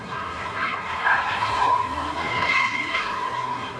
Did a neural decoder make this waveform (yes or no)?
yes